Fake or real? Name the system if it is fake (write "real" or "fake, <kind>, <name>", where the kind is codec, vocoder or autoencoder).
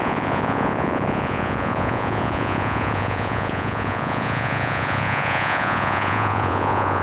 fake, vocoder, Vocos